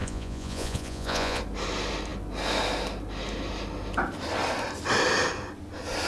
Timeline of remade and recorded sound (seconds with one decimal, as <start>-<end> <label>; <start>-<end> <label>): 0.0-1.4 remade; 1.4-6.1 recorded